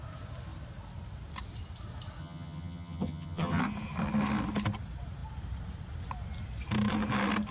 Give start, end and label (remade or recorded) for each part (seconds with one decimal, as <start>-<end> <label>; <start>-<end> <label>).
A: 0.0-2.2 recorded; 2.2-3.6 remade; 3.6-7.5 recorded